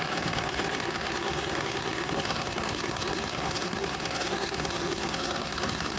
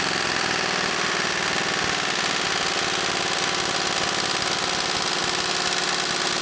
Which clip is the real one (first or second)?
second